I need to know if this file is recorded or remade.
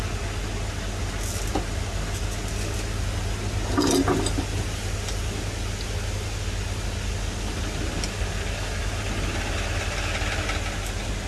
recorded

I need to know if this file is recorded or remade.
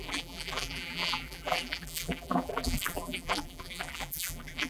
remade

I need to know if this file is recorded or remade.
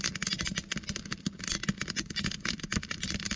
recorded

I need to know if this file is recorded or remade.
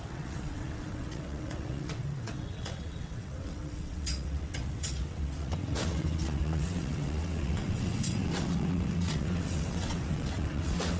remade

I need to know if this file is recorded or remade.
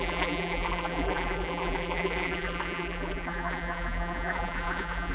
remade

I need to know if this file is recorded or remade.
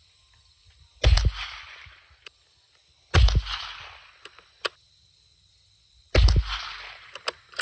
recorded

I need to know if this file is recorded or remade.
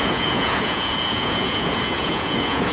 remade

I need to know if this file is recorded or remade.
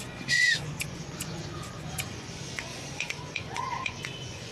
remade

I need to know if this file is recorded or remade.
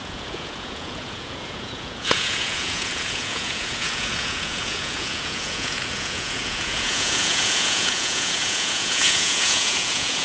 remade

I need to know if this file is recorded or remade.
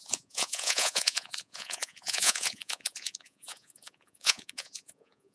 remade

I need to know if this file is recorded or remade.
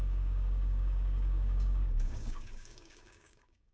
remade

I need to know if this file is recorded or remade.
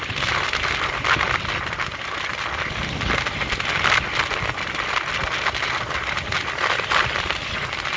recorded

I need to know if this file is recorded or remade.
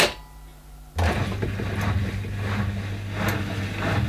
recorded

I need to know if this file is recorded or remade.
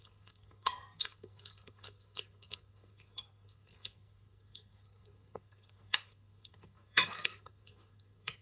remade